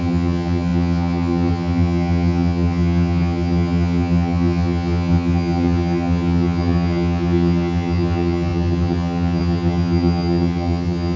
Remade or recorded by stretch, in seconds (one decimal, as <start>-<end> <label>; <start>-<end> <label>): 0.0-11.2 remade